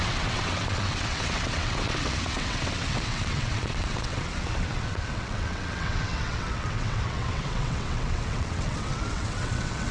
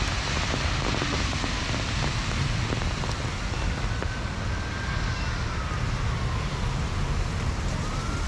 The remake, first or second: first